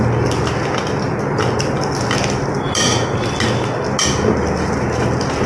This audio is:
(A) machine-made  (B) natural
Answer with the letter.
B